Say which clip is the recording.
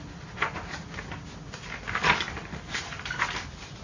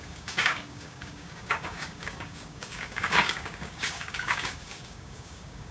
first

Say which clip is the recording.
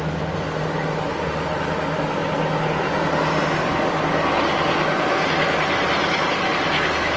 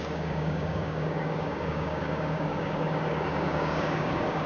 first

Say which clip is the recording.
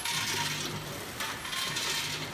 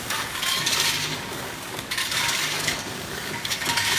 first